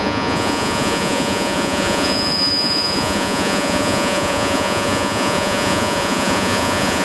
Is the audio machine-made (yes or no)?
yes